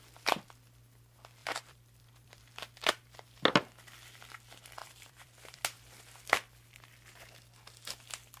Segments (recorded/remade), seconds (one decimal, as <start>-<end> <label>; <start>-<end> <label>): 0.0-1.4 recorded; 1.4-2.4 remade; 2.4-4.8 recorded; 4.8-5.6 remade; 5.6-8.4 recorded